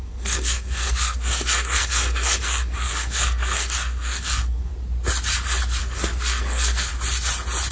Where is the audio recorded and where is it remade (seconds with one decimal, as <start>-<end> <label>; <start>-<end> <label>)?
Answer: 0.0-4.7 remade; 4.7-5.8 recorded; 5.8-6.9 remade; 6.9-7.7 recorded